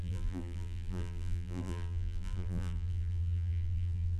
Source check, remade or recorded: remade